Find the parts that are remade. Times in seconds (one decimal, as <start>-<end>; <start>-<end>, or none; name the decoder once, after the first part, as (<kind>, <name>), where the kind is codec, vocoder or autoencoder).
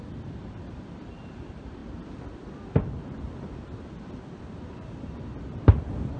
0.0-6.2 (vocoder, BigVGAN v2)